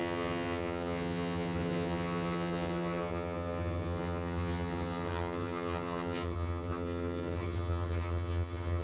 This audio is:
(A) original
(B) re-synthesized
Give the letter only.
B